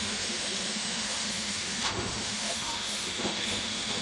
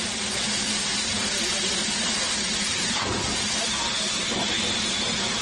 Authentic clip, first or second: second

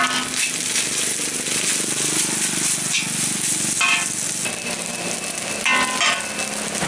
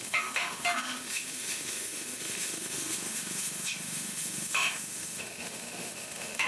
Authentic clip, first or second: first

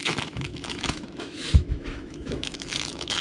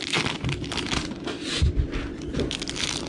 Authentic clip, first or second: second